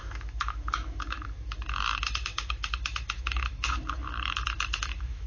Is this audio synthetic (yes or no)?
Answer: yes